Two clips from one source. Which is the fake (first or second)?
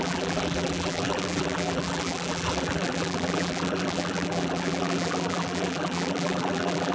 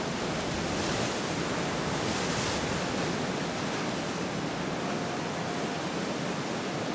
first